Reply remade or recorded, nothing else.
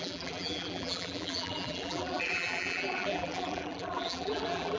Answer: remade